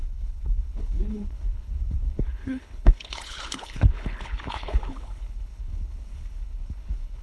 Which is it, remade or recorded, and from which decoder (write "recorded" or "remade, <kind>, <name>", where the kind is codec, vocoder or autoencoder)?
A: remade, codec, HILCodec